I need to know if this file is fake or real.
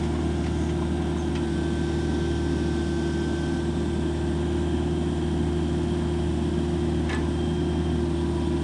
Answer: real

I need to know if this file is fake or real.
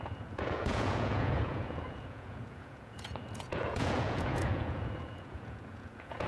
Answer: fake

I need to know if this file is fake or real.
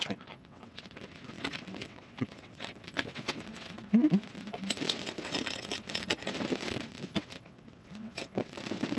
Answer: fake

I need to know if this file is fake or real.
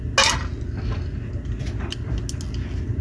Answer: real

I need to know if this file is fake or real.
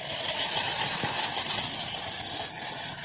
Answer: real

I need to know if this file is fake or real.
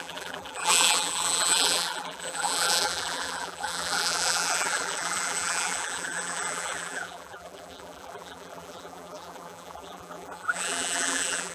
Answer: fake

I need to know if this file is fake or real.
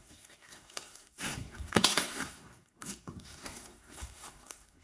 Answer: fake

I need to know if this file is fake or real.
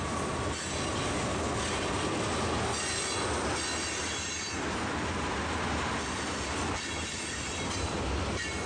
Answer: real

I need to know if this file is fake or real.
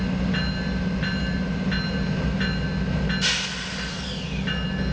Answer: real